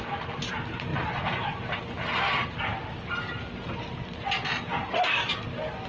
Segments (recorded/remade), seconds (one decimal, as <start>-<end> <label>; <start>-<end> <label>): 0.0-5.9 recorded